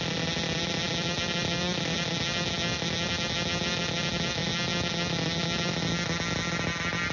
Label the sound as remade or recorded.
recorded